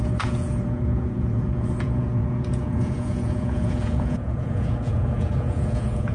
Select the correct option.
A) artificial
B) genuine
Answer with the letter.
A